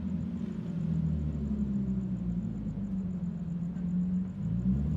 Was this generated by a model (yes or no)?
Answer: no